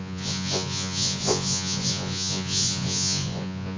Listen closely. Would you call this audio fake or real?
fake